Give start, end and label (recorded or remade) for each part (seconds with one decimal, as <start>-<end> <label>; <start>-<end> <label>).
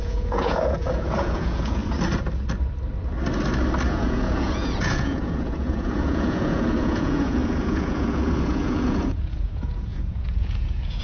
0.0-1.8 remade; 1.8-3.9 recorded; 3.9-11.0 remade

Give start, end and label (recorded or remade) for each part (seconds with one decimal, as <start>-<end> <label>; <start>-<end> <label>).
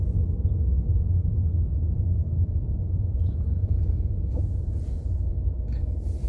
0.0-1.2 recorded; 1.2-5.0 remade; 5.0-6.3 recorded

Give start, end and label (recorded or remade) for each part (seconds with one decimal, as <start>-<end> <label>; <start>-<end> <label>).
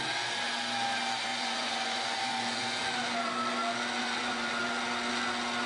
0.0-1.3 recorded; 1.3-2.9 remade; 2.9-4.0 recorded; 4.0-4.6 remade; 4.6-5.7 recorded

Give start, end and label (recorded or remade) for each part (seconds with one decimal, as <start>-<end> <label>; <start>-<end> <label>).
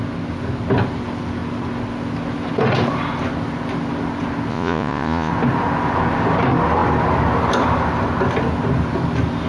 0.0-4.5 recorded; 4.5-5.3 remade; 5.3-9.5 recorded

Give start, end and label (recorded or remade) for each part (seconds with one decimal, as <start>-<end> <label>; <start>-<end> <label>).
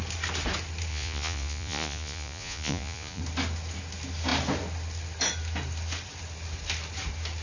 0.0-0.9 recorded; 0.9-3.2 remade; 3.2-7.4 recorded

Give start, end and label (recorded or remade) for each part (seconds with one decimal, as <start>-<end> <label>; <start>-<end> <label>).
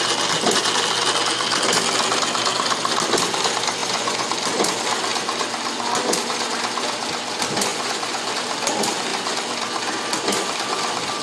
0.0-3.8 recorded; 3.8-4.3 remade; 4.3-7.7 recorded; 7.7-8.3 remade; 8.3-11.2 recorded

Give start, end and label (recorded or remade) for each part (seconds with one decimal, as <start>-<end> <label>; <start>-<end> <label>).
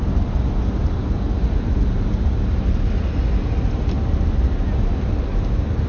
0.0-5.9 recorded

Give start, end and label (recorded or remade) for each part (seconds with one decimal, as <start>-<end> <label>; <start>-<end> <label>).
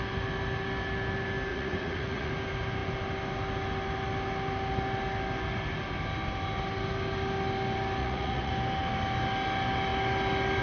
0.0-1.5 recorded; 1.5-2.3 remade; 2.3-8.0 recorded; 8.0-8.5 remade; 8.5-10.6 recorded